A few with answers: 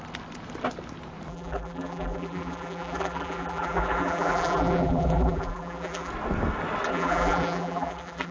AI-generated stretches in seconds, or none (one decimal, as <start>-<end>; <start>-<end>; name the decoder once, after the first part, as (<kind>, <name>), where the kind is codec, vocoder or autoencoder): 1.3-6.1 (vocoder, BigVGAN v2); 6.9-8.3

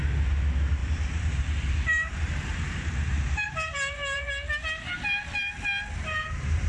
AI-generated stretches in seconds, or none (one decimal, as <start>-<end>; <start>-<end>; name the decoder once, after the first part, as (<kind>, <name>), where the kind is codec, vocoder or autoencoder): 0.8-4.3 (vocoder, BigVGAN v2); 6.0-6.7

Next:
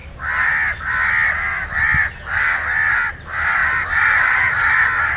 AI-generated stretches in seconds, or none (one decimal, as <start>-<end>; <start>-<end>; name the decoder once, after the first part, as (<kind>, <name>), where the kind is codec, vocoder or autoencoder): 3.6-4.8 (vocoder, BigVGAN v2)

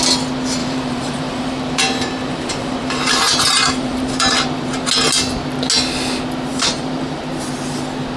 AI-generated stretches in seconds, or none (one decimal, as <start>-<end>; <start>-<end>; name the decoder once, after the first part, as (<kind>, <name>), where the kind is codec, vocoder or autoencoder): 0.6-4.9 (vocoder, BigVGAN v2); 6.5-7.2